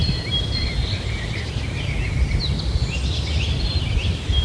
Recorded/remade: recorded